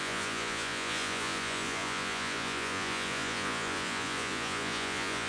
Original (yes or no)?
no